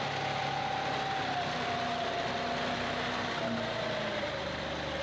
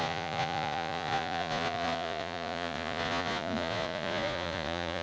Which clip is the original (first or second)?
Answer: first